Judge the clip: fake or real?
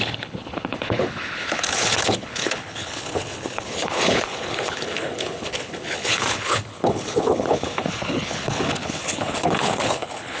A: fake